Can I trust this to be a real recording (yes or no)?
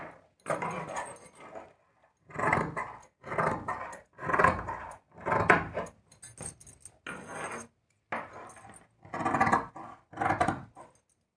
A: yes